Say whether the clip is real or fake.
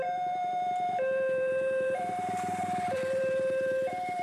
fake